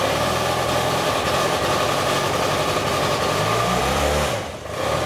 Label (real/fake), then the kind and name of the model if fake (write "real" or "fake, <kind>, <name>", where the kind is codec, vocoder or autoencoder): fake, vocoder, BigVGAN v2